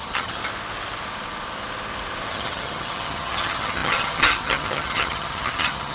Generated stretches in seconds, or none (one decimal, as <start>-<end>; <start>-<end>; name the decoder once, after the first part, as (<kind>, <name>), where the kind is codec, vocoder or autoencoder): 0.0-0.4 (vocoder, HiFi-GAN); 2.3-5.9